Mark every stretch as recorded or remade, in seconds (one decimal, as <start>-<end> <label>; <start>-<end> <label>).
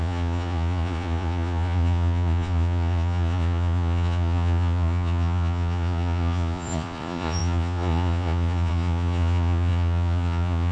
0.0-10.7 remade